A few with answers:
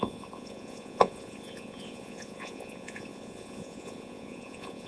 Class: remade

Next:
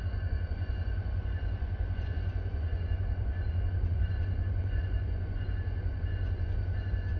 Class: remade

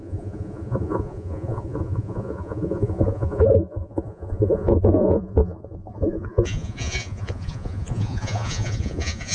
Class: remade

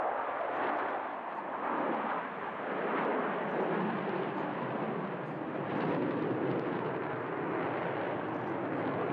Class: recorded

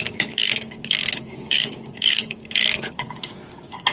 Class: remade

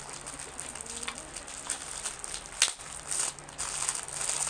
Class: recorded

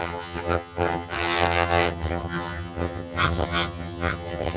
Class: remade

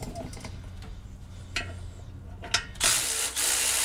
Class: recorded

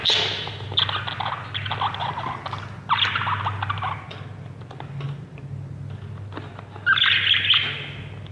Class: recorded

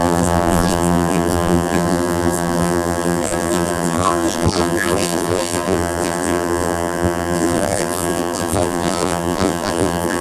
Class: remade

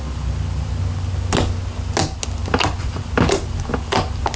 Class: recorded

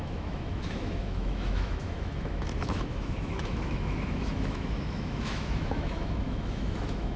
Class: remade